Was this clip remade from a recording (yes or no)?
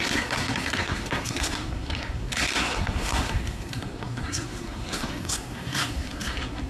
yes